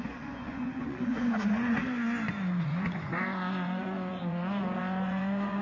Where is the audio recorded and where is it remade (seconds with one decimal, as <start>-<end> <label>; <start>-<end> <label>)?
0.0-1.8 remade; 1.8-2.6 recorded; 2.6-5.6 remade